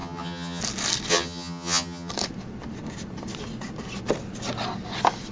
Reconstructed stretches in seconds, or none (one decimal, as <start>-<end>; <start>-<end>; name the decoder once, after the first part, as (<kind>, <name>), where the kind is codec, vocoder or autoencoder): 0.0-0.6 (vocoder, HiFi-GAN); 1.1-2.1